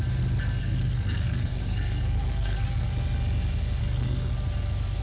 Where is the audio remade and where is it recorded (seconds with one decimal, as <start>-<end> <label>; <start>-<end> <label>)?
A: 0.0-0.6 recorded; 0.6-2.9 remade; 2.9-3.8 recorded; 3.8-4.3 remade; 4.3-5.0 recorded